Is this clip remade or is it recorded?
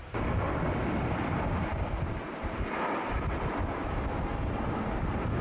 remade